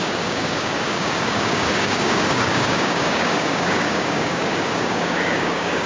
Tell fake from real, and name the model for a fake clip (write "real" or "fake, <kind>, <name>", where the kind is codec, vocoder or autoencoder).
fake, codec, DAC